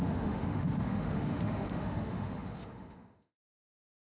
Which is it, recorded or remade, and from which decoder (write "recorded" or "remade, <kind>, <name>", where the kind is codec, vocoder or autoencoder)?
remade, autoencoder, DAC-VAE